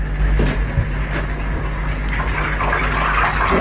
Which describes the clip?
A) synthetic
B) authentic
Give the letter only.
B